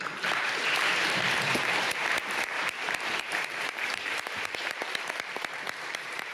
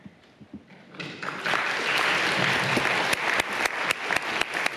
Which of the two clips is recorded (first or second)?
second